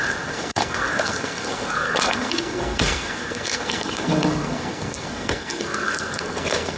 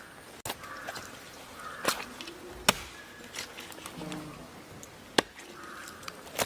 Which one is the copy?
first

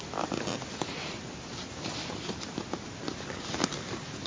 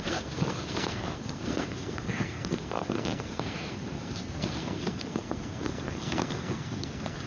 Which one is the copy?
second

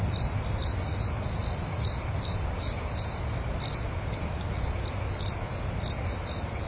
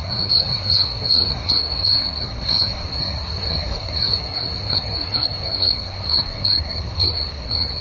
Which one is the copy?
second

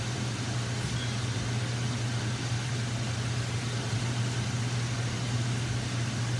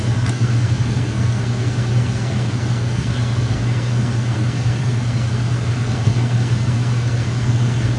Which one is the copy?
second